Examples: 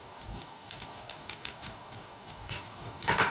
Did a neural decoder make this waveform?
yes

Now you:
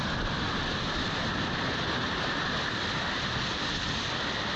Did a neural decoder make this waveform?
yes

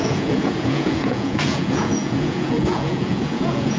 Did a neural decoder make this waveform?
yes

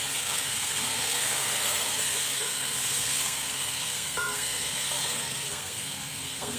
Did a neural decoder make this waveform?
yes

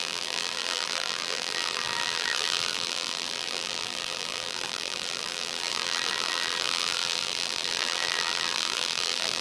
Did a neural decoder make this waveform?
yes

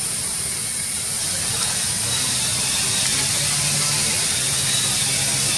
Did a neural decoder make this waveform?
no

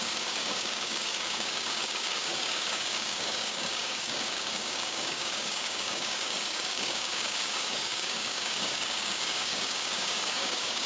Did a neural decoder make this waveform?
yes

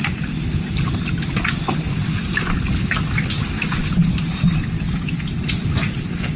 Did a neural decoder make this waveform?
no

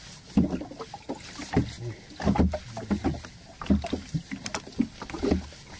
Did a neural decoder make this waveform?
no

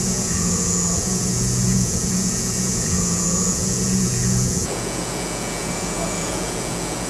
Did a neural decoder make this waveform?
yes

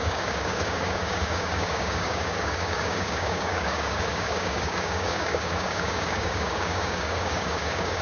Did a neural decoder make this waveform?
yes